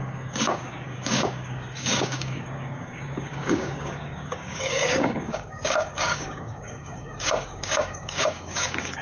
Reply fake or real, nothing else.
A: fake